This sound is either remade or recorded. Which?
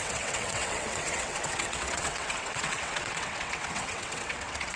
remade